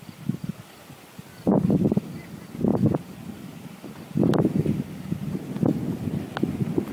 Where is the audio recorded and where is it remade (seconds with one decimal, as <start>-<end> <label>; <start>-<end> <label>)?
0.0-6.9 recorded